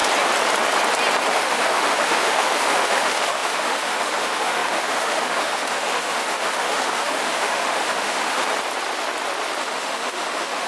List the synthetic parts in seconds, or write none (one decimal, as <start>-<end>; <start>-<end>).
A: 1.3-8.4; 9.6-10.7